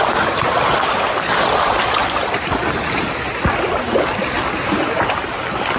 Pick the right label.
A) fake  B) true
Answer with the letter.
B